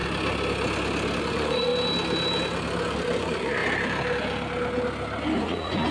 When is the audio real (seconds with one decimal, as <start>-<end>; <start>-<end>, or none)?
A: 0.0-1.2; 1.7-3.2; 3.6-5.4